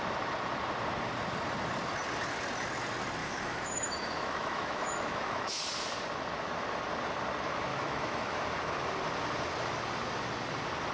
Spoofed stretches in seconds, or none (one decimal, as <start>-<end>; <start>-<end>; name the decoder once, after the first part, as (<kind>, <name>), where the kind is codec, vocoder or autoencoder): 3.2-5.6 (autoencoder, DAC-VAE); 7.7-8.4